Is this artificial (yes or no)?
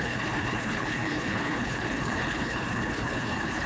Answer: yes